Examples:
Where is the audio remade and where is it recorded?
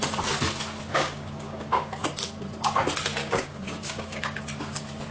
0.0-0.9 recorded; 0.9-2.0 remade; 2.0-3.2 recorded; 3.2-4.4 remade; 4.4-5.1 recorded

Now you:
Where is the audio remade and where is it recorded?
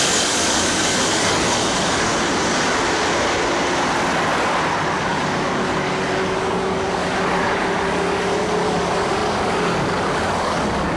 0.0-2.1 remade; 2.1-4.9 recorded; 4.9-11.0 remade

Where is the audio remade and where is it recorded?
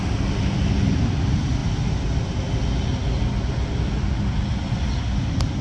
0.0-5.6 recorded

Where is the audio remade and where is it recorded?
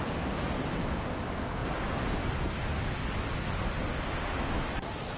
0.0-5.2 recorded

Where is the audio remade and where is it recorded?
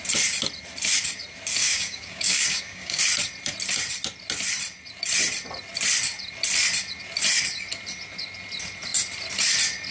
0.0-1.6 recorded; 1.6-3.0 remade; 3.0-9.9 recorded